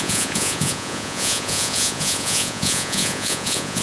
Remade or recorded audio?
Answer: remade